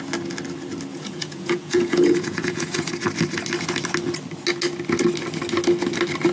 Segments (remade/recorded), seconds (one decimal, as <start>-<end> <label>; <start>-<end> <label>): 0.0-0.9 recorded; 0.9-2.9 remade; 2.9-6.3 recorded